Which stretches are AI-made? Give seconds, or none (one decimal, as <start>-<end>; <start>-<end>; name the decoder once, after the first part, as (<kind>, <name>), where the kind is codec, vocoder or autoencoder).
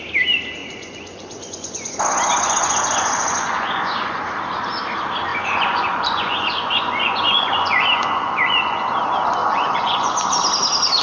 0.6-4.2 (vocoder, Vocos); 5.3-8.9; 9.4-10.1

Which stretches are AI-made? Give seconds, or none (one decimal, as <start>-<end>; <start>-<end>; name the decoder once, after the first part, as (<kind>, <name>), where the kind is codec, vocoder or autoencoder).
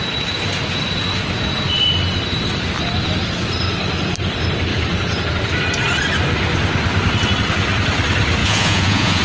8.4-9.2 (vocoder, Vocos)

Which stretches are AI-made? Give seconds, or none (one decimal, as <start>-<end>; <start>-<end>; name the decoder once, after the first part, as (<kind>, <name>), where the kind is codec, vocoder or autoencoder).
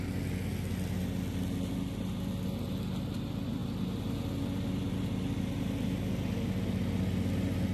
none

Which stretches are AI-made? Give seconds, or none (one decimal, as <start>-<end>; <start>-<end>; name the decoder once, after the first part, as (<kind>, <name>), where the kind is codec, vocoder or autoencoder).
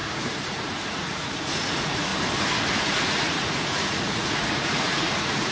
0.0-2.1 (vocoder, Vocos); 2.7-5.5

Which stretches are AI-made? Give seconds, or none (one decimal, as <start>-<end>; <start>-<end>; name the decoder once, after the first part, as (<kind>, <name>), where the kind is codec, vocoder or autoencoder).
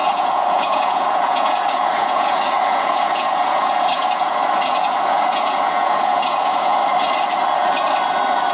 0.0-6.8 (vocoder, Vocos)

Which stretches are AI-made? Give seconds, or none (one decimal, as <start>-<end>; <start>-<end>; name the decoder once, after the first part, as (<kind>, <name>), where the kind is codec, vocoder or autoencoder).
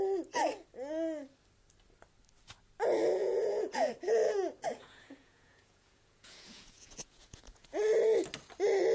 3.2-3.9 (vocoder, Vocos); 4.8-7.8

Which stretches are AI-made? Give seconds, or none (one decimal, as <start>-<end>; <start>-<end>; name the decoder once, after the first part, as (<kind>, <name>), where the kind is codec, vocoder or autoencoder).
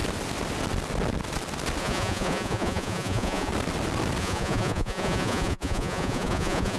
1.8-3.5 (vocoder, Vocos); 4.2-6.8